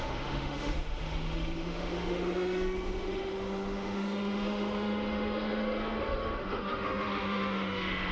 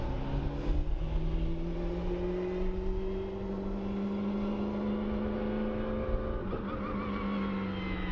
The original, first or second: second